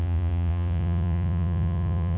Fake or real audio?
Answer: fake